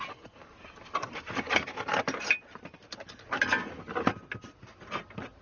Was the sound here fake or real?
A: real